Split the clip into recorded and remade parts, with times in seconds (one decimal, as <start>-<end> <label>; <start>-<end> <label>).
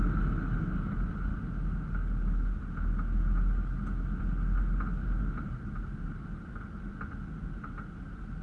0.0-8.4 recorded